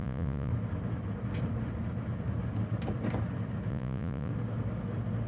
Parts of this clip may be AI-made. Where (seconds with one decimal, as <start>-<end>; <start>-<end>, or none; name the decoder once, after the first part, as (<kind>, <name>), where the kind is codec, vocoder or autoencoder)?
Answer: 0.0-0.5 (vocoder, Vocos); 3.7-4.3